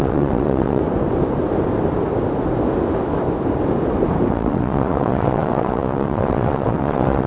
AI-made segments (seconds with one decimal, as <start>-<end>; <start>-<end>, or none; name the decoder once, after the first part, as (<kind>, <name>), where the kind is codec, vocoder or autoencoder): 0.0-0.8 (vocoder, WaveNeXt); 4.3-7.3